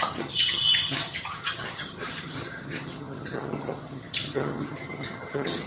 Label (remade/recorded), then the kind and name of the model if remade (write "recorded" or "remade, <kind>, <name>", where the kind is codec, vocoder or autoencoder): remade, vocoder, HiFi-GAN